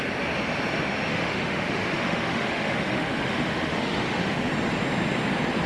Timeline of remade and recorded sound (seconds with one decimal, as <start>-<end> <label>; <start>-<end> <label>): 0.0-1.1 recorded; 1.1-4.5 remade; 4.5-5.7 recorded